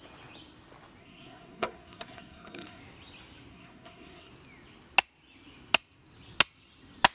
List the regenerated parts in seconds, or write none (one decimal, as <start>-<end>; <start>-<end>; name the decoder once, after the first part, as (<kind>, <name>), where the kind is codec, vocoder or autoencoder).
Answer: 1.0-2.8 (codec, SNAC); 3.5-4.3